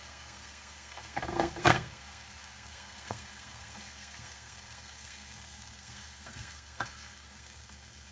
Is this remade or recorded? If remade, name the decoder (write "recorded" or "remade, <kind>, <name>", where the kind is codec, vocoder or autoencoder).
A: remade, codec, SNAC